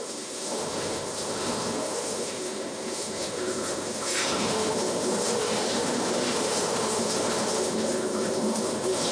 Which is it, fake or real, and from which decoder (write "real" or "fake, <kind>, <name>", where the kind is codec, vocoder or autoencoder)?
fake, autoencoder, DAC-VAE